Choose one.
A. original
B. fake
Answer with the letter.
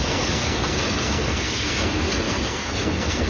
B